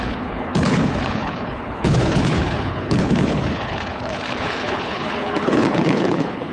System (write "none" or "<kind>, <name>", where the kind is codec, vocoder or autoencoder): codec, HILCodec